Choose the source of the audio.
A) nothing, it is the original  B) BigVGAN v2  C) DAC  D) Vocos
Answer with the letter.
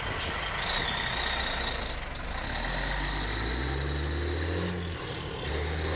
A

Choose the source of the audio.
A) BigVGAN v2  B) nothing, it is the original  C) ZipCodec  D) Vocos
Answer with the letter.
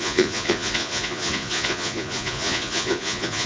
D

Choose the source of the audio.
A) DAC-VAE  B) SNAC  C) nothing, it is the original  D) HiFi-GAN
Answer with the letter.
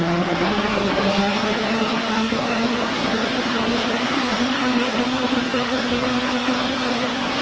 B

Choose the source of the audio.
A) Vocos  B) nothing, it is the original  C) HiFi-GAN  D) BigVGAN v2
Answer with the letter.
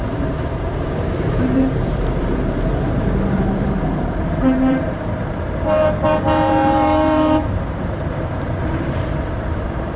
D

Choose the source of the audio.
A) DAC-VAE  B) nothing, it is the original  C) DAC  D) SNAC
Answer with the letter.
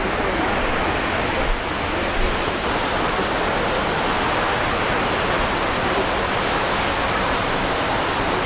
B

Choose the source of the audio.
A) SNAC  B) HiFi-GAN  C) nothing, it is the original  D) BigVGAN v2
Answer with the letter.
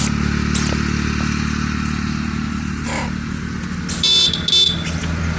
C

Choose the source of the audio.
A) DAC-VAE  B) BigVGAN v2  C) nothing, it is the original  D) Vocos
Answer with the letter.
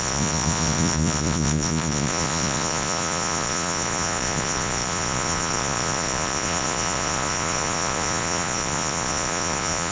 D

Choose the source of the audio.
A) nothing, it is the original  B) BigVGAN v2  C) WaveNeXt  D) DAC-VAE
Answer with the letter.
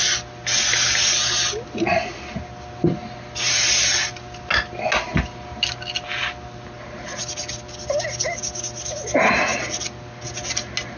A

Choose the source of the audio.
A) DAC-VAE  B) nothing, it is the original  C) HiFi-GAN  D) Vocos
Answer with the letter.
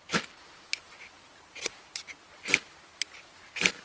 B